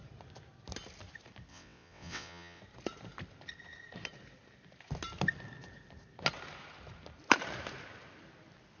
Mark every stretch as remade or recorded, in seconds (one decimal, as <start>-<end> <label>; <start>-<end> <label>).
0.0-1.5 recorded; 1.5-2.6 remade; 2.6-8.8 recorded

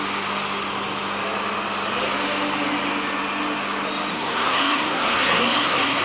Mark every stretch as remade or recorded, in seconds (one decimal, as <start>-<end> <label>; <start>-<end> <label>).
0.0-4.1 recorded; 4.1-6.0 remade

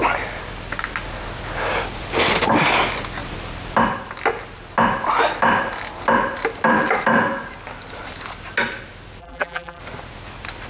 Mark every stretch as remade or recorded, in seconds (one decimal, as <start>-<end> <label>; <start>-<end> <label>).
0.0-9.2 recorded; 9.2-9.8 remade; 9.8-10.7 recorded

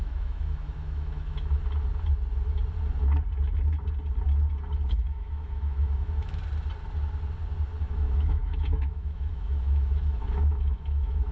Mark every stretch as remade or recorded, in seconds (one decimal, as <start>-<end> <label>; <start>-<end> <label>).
0.0-1.6 remade; 1.6-4.9 recorded; 4.9-6.4 remade; 6.4-7.8 recorded; 7.8-11.3 remade

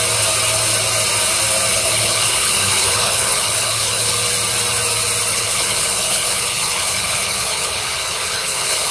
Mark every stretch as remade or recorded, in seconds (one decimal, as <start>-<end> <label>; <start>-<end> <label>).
0.0-1.7 recorded; 1.7-4.1 remade; 4.1-5.3 recorded; 5.3-8.9 remade

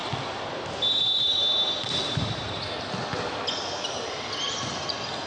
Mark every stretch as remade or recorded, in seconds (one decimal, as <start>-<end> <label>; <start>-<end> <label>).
0.0-5.3 recorded